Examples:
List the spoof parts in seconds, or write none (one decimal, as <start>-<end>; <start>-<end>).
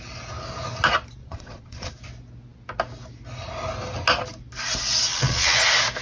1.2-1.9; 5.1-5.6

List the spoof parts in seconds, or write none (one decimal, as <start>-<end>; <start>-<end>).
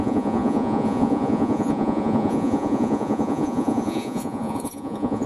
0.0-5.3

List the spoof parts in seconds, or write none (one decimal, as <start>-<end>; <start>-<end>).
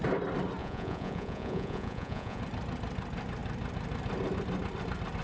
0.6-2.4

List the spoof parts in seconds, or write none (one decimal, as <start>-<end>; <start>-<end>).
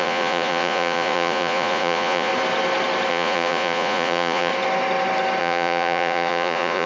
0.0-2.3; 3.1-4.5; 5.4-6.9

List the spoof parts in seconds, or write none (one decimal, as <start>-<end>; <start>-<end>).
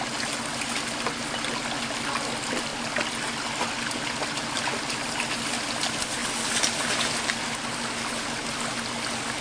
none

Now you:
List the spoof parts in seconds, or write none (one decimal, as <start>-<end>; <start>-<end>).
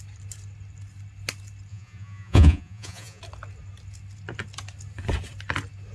1.7-3.2